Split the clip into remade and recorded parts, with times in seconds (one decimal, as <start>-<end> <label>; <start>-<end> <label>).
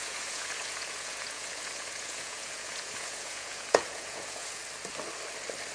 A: 0.0-4.6 remade; 4.6-5.7 recorded